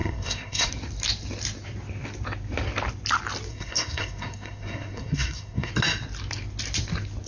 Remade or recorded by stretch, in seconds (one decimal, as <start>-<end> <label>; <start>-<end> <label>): 0.0-0.7 remade; 0.7-3.5 recorded; 3.5-5.7 remade; 5.7-7.3 recorded